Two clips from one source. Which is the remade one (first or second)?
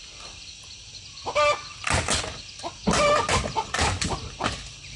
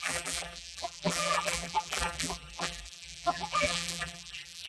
second